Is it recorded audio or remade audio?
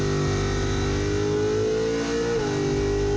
recorded